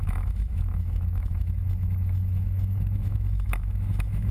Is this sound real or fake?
fake